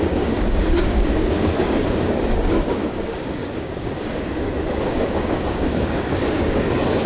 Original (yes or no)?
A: no